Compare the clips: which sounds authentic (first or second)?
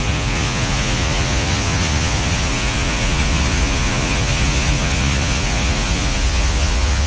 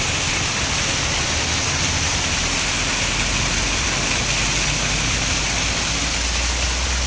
second